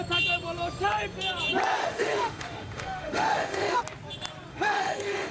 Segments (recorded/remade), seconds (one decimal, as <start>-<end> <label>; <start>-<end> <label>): 0.0-1.8 recorded; 1.8-3.8 remade; 3.8-4.5 recorded; 4.5-5.3 remade